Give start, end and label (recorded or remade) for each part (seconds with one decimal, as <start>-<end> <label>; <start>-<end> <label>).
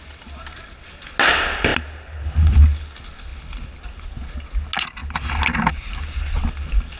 0.0-7.0 recorded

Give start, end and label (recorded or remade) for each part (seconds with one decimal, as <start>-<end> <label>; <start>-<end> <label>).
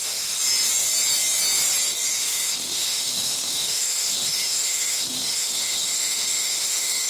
0.0-0.4 remade; 0.4-2.1 recorded; 2.1-7.1 remade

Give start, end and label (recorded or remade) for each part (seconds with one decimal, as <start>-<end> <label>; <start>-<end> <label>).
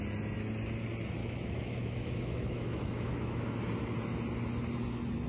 0.0-1.2 recorded; 1.2-3.4 remade; 3.4-5.3 recorded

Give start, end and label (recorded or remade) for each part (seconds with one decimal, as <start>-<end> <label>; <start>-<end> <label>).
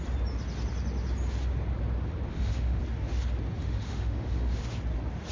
0.0-2.3 recorded; 2.3-2.8 remade; 2.8-3.6 recorded; 3.6-4.6 remade; 4.6-5.3 recorded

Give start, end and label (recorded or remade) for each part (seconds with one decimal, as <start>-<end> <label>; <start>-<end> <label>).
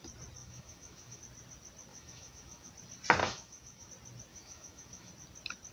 0.0-0.4 recorded; 0.4-1.2 remade; 1.2-1.9 recorded; 1.9-2.7 remade; 2.7-3.2 recorded; 3.2-3.9 remade; 3.9-4.3 recorded; 4.3-5.1 remade; 5.1-5.7 recorded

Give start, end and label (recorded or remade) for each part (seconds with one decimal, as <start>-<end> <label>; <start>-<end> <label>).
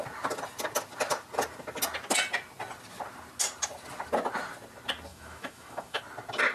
0.0-5.1 recorded; 5.1-6.0 remade; 6.0-6.5 recorded